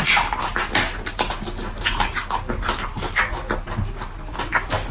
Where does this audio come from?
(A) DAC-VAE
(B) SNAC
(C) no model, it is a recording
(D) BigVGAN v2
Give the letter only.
C